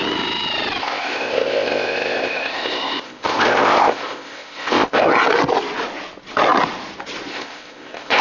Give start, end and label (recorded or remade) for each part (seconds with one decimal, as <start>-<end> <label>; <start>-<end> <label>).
0.0-0.8 recorded; 0.8-5.1 remade; 5.1-7.3 recorded; 7.3-8.2 remade